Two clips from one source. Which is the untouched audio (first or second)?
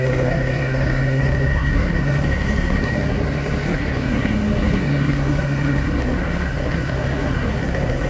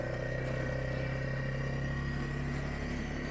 second